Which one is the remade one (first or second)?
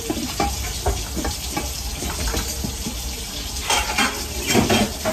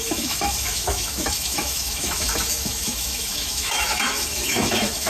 second